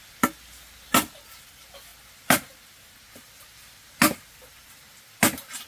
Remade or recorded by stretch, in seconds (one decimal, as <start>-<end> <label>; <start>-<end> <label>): 0.0-5.7 recorded